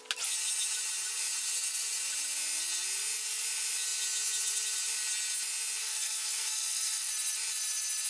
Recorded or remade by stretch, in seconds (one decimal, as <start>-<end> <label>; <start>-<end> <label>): 0.0-5.8 recorded; 5.8-7.1 remade; 7.1-8.1 recorded